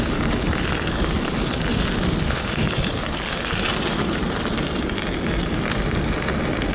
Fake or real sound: real